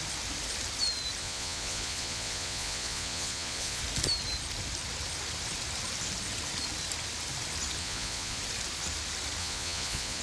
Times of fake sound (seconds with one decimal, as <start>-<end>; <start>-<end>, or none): 1.2-3.8; 7.8-8.4; 9.4-10.2